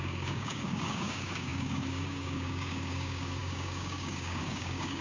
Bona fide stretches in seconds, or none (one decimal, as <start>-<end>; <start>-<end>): none